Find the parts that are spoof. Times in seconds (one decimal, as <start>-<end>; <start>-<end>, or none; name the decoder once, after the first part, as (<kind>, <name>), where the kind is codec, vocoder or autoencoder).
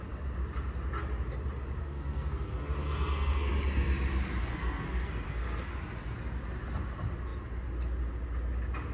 1.8-3.5 (codec, SNAC); 4.4-5.7